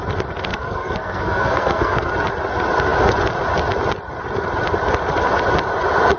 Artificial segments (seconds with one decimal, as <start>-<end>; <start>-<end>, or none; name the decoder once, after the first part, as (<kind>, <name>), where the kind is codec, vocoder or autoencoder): 0.5-2.1 (codec, SNAC)